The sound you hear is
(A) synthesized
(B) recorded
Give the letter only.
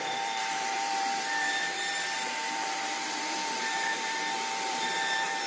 A